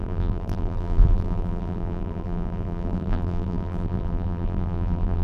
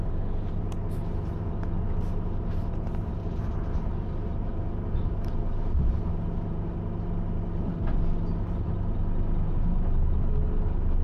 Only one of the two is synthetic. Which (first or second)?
first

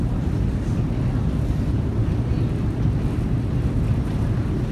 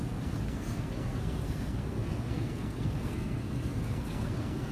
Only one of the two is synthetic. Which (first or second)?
second